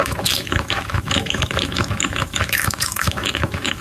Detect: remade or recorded remade